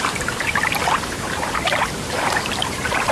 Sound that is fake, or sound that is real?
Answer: fake